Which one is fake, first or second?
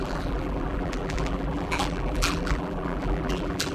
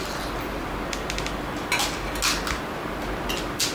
first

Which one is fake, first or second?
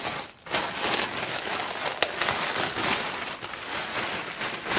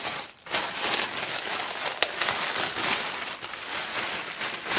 second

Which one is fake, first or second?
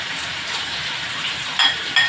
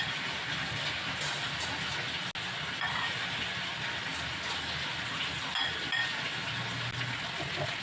first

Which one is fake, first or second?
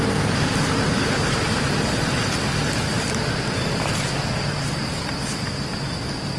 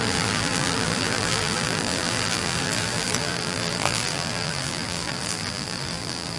second